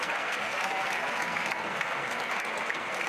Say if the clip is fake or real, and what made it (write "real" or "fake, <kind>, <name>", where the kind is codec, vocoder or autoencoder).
fake, codec, SNAC